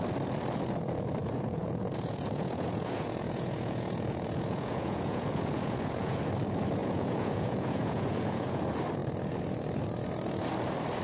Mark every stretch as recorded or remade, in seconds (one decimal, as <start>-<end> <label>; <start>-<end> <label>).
0.0-1.2 recorded; 1.2-6.2 remade; 6.2-6.8 recorded; 6.8-8.6 remade; 8.6-11.0 recorded